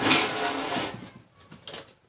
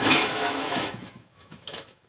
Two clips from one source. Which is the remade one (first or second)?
second